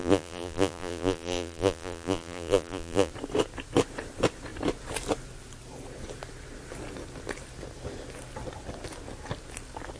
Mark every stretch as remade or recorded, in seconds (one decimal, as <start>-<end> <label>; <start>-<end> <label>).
0.0-3.1 remade; 3.1-10.0 recorded